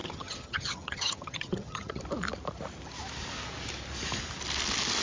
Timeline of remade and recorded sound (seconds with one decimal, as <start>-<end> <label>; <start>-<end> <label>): 0.0-2.0 remade; 2.0-5.0 recorded